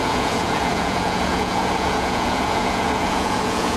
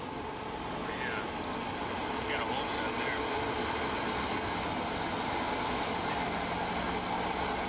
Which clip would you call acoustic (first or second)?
second